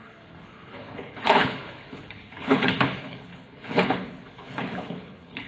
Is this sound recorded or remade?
remade